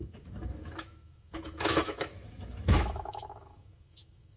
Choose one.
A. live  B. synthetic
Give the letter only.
B